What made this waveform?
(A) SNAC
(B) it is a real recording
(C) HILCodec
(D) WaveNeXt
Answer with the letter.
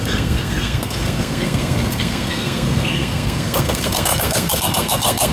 A